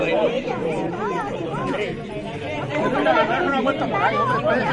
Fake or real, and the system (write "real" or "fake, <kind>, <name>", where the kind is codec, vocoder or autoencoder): real